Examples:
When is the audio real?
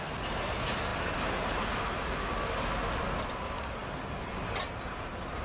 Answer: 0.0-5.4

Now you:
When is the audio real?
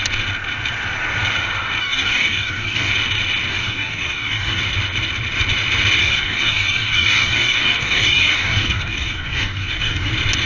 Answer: 0.0-1.8; 2.9-3.5; 4.6-6.0; 10.1-10.5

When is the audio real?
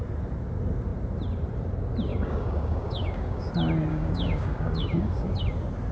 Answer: 0.0-2.1; 3.4-3.9; 5.4-5.9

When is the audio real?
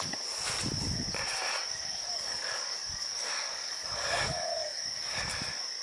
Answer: 0.0-1.7; 5.2-5.8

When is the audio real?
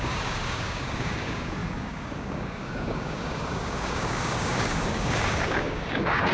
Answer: none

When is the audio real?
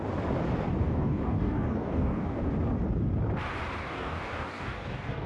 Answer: 0.0-0.8; 2.4-3.8